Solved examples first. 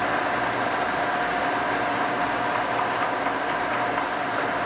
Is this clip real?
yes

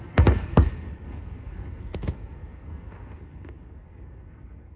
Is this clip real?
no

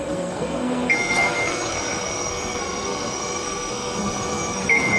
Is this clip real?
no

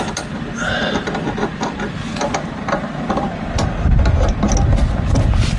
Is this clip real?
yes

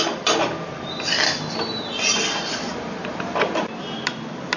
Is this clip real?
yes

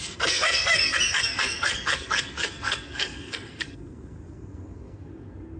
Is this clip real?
no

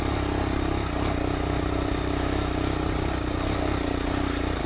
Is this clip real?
yes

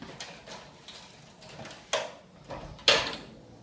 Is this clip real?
yes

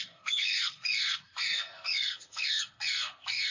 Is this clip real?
no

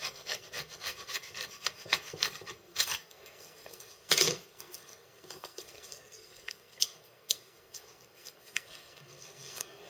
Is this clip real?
no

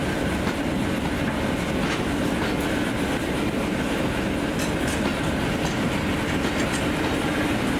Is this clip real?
yes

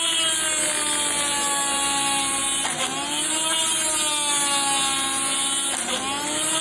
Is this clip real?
yes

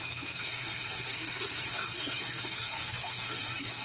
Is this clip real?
no